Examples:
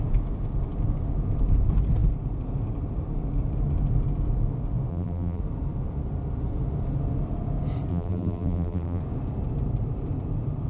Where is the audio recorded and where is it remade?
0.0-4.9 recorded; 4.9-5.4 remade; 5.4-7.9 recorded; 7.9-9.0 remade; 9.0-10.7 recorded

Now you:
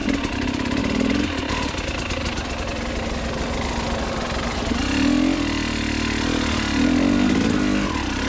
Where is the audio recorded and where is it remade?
0.0-0.8 remade; 0.8-8.3 recorded

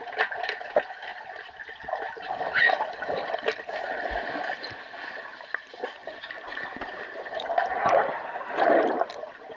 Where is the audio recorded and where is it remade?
0.0-6.0 recorded; 6.0-8.0 remade; 8.0-9.6 recorded

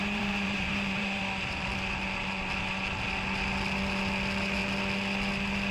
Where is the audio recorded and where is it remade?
0.0-1.2 remade; 1.2-5.7 recorded

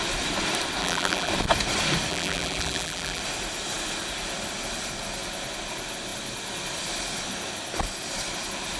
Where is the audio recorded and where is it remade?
0.0-0.8 recorded; 0.8-1.3 remade; 1.3-2.1 recorded; 2.1-3.2 remade; 3.2-8.8 recorded

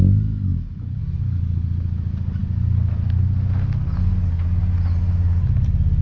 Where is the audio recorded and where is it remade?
0.0-0.5 recorded; 0.5-1.0 remade; 1.0-6.0 recorded

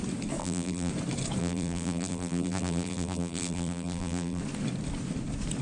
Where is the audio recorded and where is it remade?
0.0-0.4 recorded; 0.4-0.9 remade; 0.9-1.4 recorded; 1.4-4.4 remade; 4.4-5.6 recorded

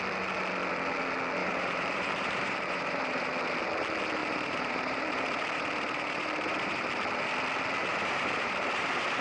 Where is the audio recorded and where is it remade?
0.0-1.4 recorded; 1.4-3.3 remade; 3.3-4.2 recorded; 4.2-7.0 remade; 7.0-7.9 recorded; 7.9-9.2 remade